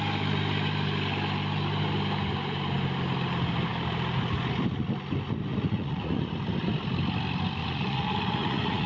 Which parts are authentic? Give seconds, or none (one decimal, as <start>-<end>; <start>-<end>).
0.0-5.5; 6.3-7.6